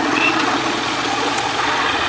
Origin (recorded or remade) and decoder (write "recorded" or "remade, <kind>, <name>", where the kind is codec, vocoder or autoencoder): remade, vocoder, Vocos